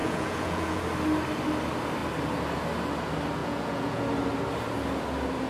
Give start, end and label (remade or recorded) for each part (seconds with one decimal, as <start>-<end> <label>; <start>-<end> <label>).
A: 0.0-0.8 remade; 0.8-3.4 recorded; 3.4-4.0 remade; 4.0-5.5 recorded